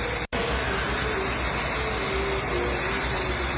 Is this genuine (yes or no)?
yes